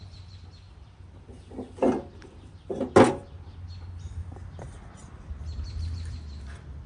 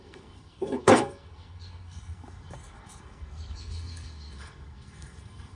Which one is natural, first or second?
first